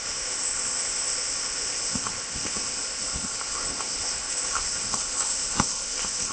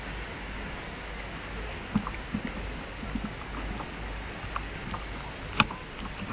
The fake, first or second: first